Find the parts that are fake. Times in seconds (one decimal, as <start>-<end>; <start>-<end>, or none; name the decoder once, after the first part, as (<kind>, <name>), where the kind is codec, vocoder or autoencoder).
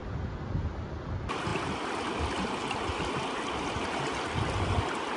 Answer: none